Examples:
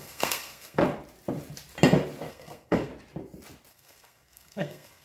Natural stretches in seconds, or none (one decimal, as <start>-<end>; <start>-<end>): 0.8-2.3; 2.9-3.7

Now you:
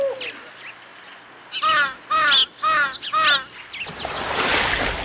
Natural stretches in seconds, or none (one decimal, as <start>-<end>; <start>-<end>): 0.0-5.0

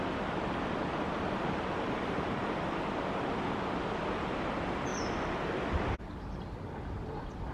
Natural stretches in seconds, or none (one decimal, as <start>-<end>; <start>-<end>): 0.0-7.5